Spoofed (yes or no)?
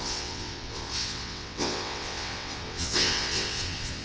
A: yes